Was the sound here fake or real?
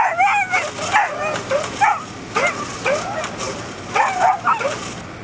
real